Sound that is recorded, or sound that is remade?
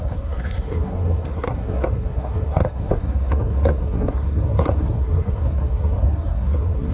remade